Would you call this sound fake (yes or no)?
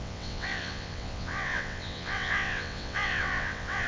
yes